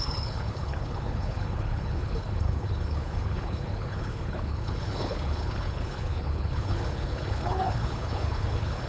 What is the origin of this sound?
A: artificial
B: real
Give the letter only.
A